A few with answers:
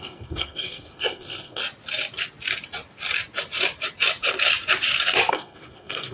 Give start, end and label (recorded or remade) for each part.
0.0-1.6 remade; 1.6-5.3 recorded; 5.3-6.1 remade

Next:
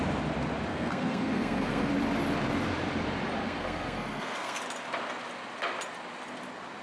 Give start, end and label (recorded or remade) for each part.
0.0-0.7 recorded; 0.7-1.9 remade; 1.9-3.4 recorded; 3.4-4.6 remade; 4.6-6.8 recorded

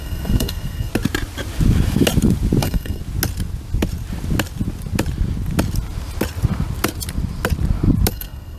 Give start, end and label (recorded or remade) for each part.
0.0-0.9 remade; 0.9-2.6 recorded; 2.6-3.0 remade; 3.0-8.1 recorded; 8.1-8.6 remade

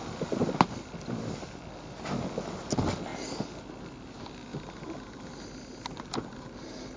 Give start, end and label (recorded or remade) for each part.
0.0-7.0 recorded

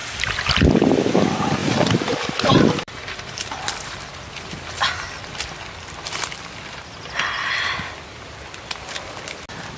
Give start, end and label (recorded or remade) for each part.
0.0-1.6 recorded; 1.6-6.1 remade; 6.1-9.8 recorded